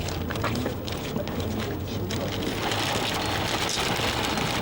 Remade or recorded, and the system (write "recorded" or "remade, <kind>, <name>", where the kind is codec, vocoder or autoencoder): recorded